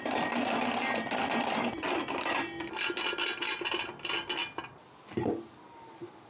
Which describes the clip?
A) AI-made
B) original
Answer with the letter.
B